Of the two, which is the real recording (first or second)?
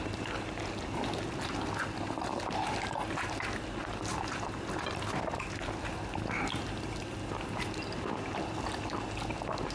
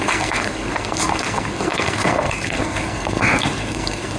first